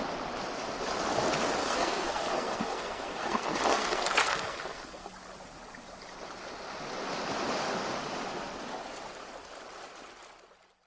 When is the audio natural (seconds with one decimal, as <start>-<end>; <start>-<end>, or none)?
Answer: 0.0-1.6; 5.1-10.9